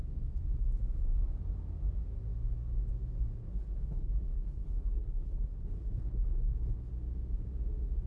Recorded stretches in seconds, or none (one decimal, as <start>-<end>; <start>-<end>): 0.0-3.4; 6.9-8.1